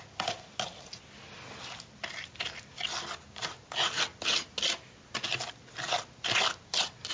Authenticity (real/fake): real